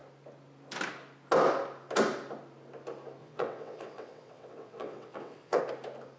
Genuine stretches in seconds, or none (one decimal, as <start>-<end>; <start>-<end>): 0.0-3.2; 5.6-6.2

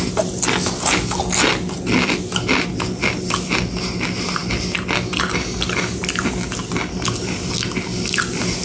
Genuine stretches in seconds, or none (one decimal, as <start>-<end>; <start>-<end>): 0.0-8.6